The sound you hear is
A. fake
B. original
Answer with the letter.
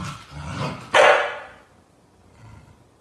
B